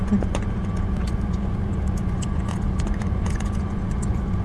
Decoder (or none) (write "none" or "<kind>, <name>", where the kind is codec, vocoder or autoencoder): vocoder, Vocos